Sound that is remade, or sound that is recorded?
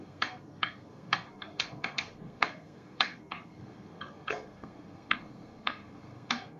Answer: remade